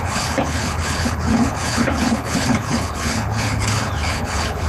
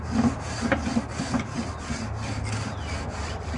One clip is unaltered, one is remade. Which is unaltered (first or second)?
second